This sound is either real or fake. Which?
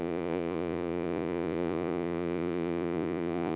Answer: fake